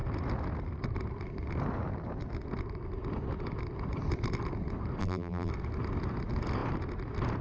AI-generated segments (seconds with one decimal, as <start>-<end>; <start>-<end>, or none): 5.0-5.5